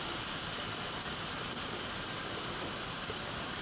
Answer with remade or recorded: recorded